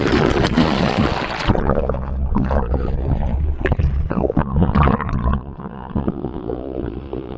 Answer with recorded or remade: remade